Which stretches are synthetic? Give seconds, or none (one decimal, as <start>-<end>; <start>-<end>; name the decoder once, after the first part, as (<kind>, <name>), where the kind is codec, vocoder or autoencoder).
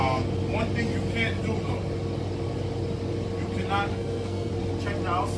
3.9-4.5 (codec, SNAC)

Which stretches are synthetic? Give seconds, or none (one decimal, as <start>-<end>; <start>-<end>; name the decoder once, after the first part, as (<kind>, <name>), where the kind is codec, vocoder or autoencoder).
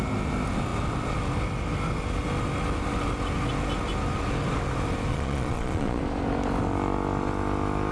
5.1-6.0 (vocoder, Vocos)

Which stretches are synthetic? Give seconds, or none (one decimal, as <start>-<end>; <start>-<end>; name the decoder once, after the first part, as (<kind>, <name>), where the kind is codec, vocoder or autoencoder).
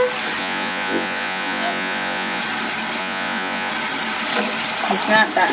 0.4-2.4 (vocoder, Vocos); 3.0-3.7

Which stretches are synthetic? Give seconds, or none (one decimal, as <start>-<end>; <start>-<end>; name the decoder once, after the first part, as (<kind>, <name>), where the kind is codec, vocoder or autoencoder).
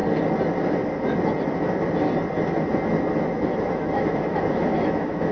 3.2-5.3 (autoencoder, DAC-VAE)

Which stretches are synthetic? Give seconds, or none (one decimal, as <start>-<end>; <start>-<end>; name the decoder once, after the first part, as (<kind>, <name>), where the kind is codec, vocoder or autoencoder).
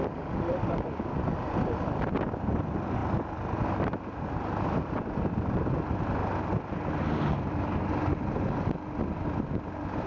0.0-3.0 (vocoder, BigVGAN v2); 4.8-6.2; 7.9-10.1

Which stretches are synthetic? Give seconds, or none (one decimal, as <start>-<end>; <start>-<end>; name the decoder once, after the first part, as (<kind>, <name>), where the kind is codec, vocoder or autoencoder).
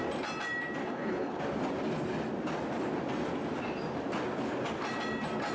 0.8-1.4 (codec, HILCodec)